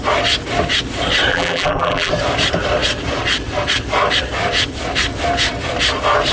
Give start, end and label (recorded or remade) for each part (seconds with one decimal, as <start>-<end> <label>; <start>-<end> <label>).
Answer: 0.0-1.3 recorded; 1.3-2.1 remade; 2.1-6.3 recorded